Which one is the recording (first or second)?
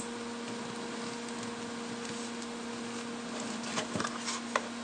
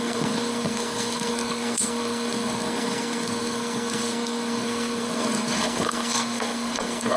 first